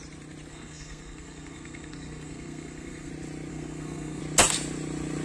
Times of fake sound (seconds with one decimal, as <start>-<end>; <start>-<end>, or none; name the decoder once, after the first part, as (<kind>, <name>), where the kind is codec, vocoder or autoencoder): 0.5-3.1 (codec, SNAC); 3.5-4.2